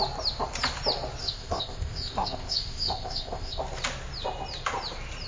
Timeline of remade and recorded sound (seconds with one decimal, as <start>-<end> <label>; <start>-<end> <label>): 0.0-1.2 recorded; 1.2-3.6 remade; 3.6-5.3 recorded